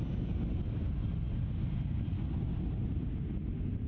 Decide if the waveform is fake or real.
real